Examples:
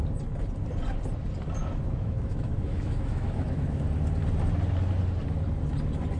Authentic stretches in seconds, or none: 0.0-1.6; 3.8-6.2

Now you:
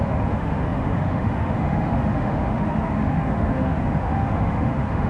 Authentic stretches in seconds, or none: none